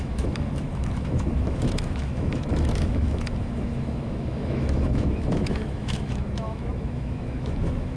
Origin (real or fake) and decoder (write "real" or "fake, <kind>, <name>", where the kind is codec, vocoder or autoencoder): fake, autoencoder, DAC-VAE